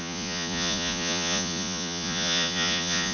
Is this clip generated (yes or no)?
yes